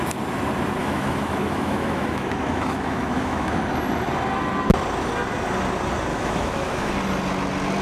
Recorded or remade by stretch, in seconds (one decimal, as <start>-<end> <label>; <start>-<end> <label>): 0.0-0.8 recorded; 0.8-3.6 remade; 3.6-6.1 recorded; 6.1-6.9 remade; 6.9-7.8 recorded